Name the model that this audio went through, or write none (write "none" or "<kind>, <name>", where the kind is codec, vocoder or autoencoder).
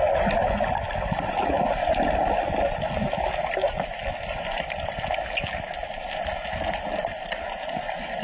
none